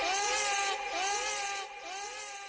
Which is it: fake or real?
real